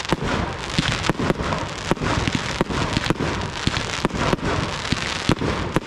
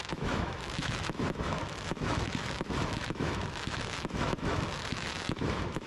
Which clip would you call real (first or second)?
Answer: first